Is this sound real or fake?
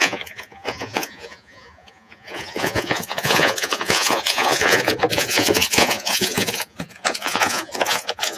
fake